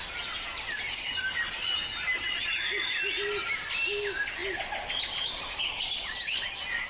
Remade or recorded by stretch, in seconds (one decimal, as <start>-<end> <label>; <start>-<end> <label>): 0.0-6.9 recorded